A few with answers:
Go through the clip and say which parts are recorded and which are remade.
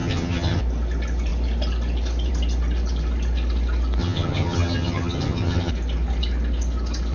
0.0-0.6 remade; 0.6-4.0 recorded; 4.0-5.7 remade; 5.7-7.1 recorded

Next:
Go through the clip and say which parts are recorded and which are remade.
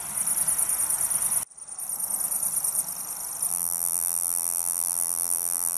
0.0-3.5 recorded; 3.5-5.8 remade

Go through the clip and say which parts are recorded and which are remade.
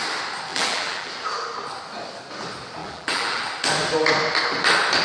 0.0-0.5 recorded; 0.5-1.1 remade; 1.1-2.8 recorded; 2.8-3.4 remade; 3.4-5.0 recorded